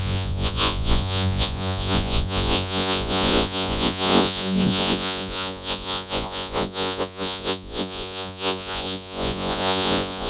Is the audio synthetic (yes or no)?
yes